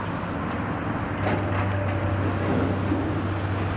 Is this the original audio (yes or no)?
yes